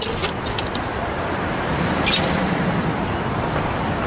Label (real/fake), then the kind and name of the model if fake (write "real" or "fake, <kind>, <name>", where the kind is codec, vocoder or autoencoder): fake, vocoder, BigVGAN v2